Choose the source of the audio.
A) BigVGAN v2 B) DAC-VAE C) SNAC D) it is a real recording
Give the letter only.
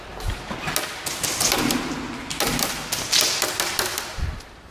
D